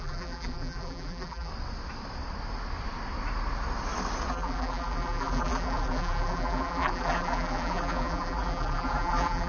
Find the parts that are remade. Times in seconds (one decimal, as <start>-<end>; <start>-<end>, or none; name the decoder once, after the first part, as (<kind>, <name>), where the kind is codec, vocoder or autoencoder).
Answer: 0.0-1.5 (vocoder, BigVGAN v2); 4.3-9.5